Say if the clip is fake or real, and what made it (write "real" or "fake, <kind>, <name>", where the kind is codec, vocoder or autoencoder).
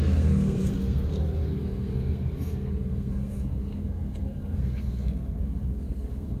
fake, codec, SNAC